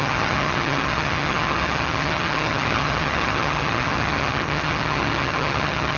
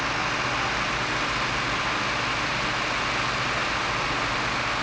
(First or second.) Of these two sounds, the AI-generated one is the first